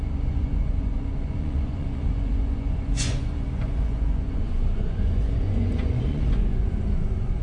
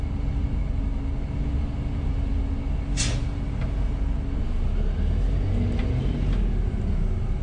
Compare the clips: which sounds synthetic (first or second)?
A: first